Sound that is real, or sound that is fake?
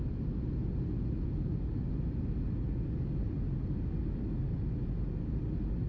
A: real